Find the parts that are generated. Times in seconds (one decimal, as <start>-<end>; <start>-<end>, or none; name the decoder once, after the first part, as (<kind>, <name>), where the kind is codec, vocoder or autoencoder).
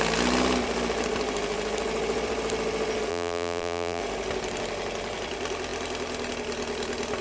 3.1-4.0 (vocoder, BigVGAN v2)